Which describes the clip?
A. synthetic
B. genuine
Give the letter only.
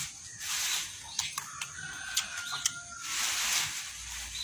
B